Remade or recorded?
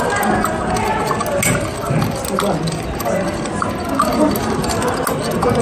recorded